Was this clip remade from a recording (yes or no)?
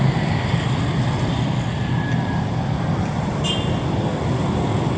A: no